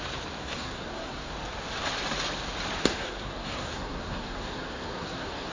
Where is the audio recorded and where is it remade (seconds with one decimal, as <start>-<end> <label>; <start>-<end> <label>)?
0.0-0.4 recorded; 0.4-1.3 remade; 1.3-2.9 recorded; 2.9-5.5 remade